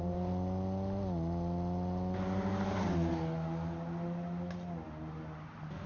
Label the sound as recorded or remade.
recorded